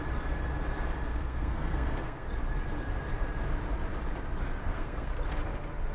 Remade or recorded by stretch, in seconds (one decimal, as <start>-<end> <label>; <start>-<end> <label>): 0.0-1.1 recorded; 1.1-2.3 remade; 2.3-4.6 recorded; 4.6-5.1 remade; 5.1-5.9 recorded